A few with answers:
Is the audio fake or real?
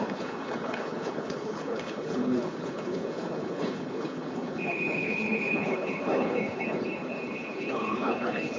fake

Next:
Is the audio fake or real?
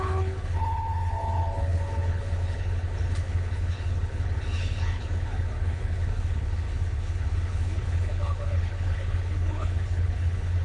fake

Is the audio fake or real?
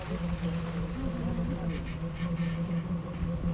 real